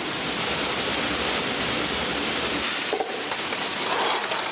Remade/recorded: recorded